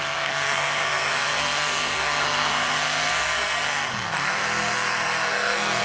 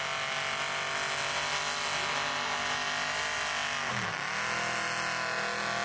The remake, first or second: first